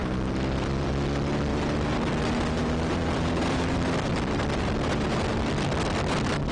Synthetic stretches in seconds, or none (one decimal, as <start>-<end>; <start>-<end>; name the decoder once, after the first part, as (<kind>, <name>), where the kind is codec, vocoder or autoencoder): 0.0-0.9 (vocoder, BigVGAN v2); 1.5-5.4